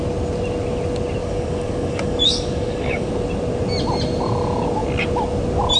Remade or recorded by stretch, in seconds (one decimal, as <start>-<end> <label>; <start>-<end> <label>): 0.0-1.2 recorded; 1.2-3.1 remade; 3.1-5.8 recorded